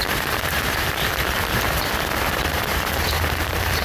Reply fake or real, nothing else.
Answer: fake